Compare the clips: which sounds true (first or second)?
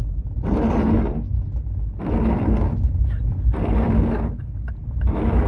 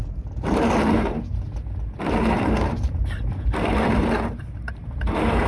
first